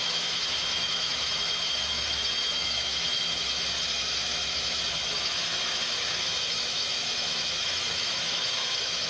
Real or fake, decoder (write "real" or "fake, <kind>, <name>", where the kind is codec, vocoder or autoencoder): fake, autoencoder, DAC-VAE